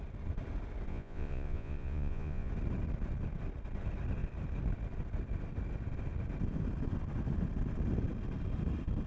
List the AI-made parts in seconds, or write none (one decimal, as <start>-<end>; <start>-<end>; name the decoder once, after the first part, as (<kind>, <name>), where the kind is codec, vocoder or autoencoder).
0.9-2.5 (vocoder, Vocos)